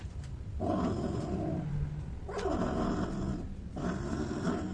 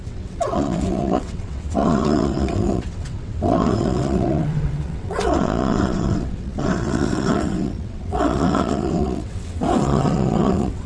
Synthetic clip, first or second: second